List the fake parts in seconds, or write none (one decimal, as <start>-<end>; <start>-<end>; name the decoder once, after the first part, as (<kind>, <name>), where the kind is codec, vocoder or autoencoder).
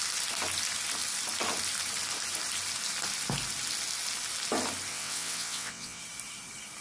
4.9-6.0 (vocoder, WaveNeXt)